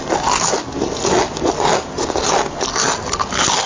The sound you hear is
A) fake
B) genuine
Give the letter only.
B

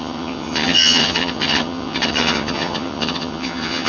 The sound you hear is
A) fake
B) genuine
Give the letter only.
A